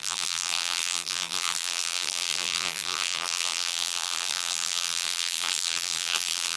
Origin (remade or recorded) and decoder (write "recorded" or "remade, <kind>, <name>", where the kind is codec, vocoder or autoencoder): remade, vocoder, BigVGAN v2